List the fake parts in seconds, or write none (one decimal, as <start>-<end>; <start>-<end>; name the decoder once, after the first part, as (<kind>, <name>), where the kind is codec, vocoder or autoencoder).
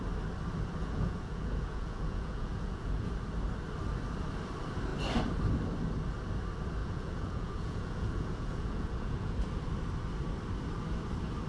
0.8-3.1 (vocoder, Vocos); 6.8-9.3